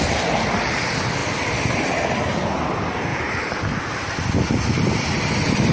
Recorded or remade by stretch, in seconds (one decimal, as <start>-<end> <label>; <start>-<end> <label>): 0.0-3.1 recorded; 3.1-4.5 remade; 4.5-5.7 recorded